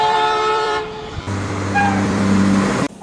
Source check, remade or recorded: remade